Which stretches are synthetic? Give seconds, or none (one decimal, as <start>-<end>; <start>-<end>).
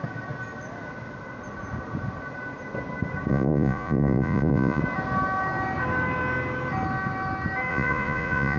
3.3-4.8; 7.7-8.6